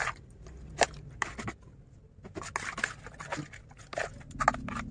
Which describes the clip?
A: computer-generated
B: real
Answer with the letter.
B